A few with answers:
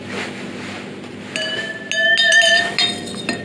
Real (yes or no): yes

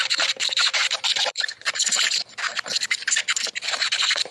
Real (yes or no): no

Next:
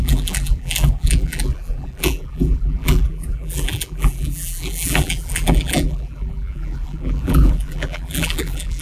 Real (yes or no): no